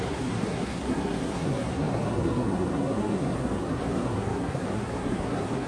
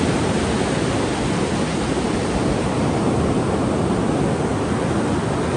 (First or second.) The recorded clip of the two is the second